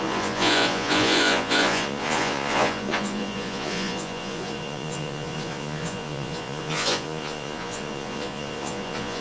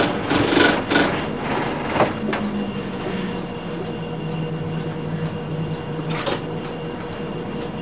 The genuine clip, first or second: second